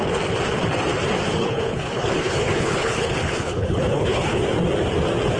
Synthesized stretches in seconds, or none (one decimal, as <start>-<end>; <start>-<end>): 1.4-4.4